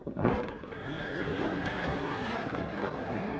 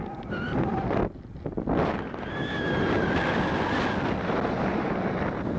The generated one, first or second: first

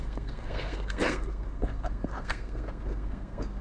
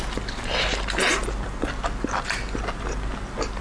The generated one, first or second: first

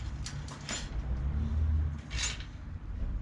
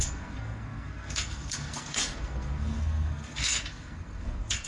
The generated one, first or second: second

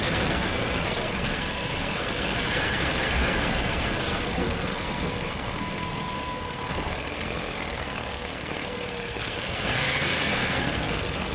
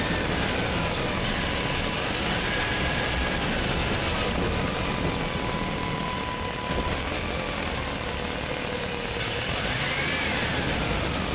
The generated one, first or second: first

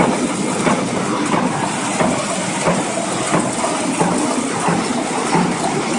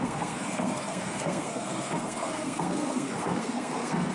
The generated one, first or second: second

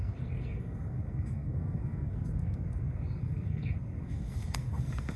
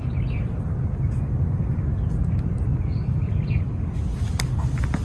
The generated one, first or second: first